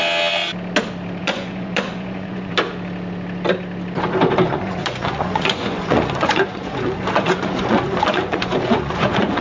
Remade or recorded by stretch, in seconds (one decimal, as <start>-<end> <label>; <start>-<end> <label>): 0.0-1.2 recorded; 1.2-2.5 remade; 2.5-4.5 recorded; 4.5-9.4 remade